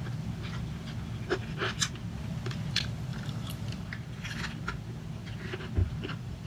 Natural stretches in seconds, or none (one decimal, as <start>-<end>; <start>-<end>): 0.0-3.1; 4.0-5.8